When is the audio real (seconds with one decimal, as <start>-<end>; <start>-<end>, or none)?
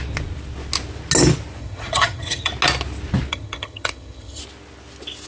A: 0.0-1.6; 2.5-3.3; 4.4-5.3